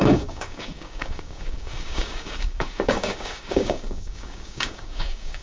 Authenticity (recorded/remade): remade